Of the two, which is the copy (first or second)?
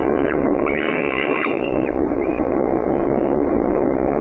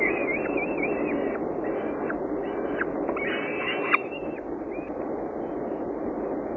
first